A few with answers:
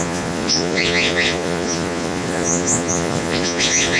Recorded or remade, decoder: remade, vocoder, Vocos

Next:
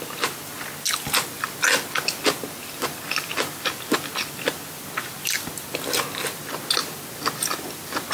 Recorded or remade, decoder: recorded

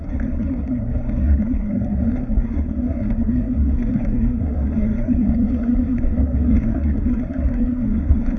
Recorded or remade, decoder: remade, codec, SNAC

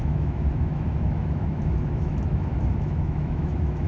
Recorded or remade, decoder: remade, autoencoder, DAC-VAE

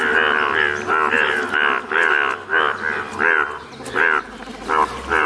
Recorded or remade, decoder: recorded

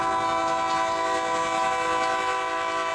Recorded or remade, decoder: recorded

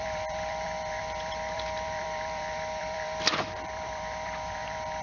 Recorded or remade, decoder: remade, vocoder, BigVGAN v2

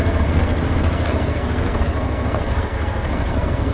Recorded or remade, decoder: remade, codec, SNAC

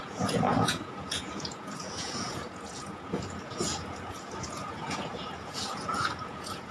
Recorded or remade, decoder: remade, vocoder, Vocos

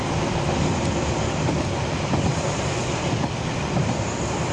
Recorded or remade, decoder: recorded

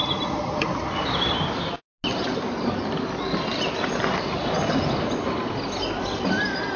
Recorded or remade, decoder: recorded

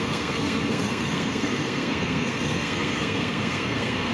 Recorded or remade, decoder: remade, codec, SNAC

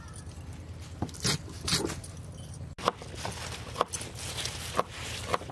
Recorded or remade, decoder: recorded